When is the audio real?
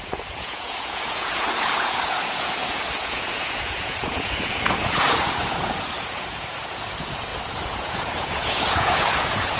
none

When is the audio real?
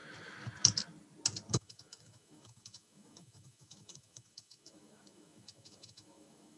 0.0-1.5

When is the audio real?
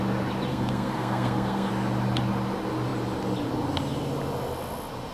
0.0-0.5; 1.7-5.1